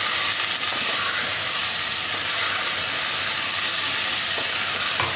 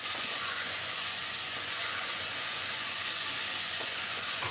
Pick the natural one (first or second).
first